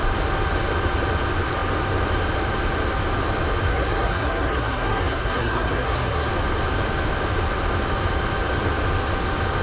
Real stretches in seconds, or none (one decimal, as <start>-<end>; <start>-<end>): 0.0-3.7; 6.3-9.6